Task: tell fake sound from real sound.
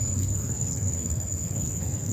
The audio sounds fake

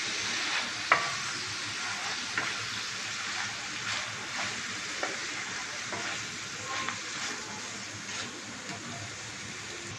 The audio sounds real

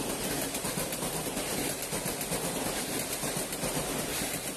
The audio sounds real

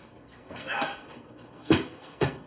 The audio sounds fake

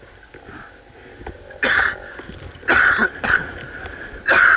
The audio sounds real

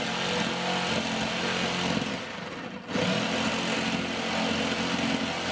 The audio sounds real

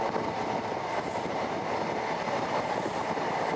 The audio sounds real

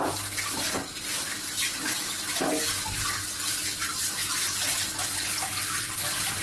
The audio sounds real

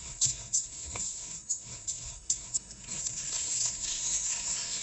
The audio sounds fake